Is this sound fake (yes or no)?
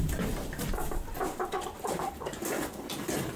yes